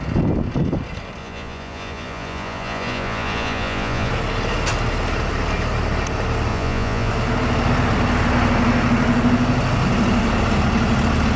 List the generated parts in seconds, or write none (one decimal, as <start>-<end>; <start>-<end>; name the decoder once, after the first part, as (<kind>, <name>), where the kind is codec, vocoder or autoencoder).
1.2-4.1 (vocoder, Vocos); 6.5-7.1